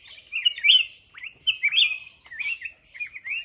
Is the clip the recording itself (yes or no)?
yes